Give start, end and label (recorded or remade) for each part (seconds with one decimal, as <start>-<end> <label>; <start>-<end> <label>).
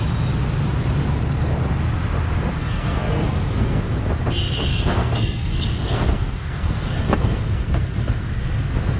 0.0-2.6 recorded; 2.6-3.8 remade; 3.8-4.7 recorded; 4.7-9.0 remade